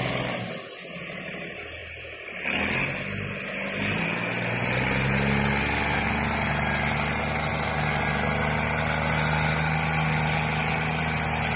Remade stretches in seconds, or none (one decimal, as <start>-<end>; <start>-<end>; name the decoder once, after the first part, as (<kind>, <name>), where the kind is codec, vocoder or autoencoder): none